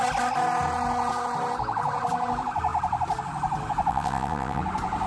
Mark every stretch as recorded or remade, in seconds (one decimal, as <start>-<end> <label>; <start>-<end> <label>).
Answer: 0.0-3.9 recorded; 3.9-4.6 remade; 4.6-5.1 recorded